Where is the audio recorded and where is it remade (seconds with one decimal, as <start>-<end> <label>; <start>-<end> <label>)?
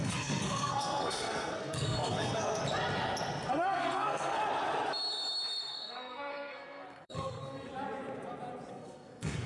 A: 0.0-2.6 remade; 2.6-3.5 recorded; 3.5-4.4 remade; 4.4-5.7 recorded; 5.7-7.7 remade; 7.7-8.7 recorded; 8.7-9.5 remade